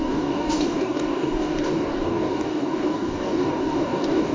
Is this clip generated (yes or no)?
yes